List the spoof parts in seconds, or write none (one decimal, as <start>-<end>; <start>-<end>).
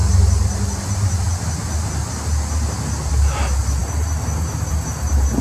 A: none